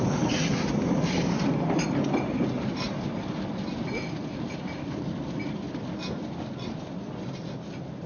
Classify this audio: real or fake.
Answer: real